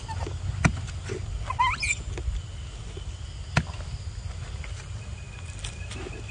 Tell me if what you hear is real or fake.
real